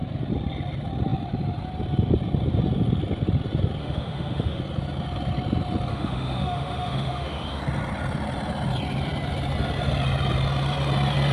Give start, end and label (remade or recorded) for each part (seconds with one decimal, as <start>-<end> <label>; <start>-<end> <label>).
0.0-3.8 recorded; 3.8-4.6 remade; 4.6-5.9 recorded; 5.9-7.6 remade; 7.6-11.3 recorded